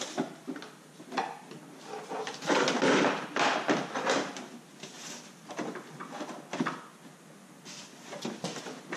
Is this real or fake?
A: real